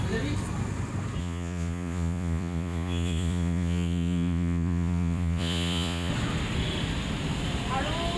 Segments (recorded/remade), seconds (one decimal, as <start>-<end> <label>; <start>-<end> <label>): 0.0-1.2 recorded; 1.2-6.1 remade; 6.1-8.2 recorded